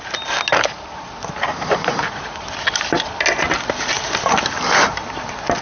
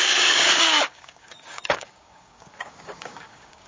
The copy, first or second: second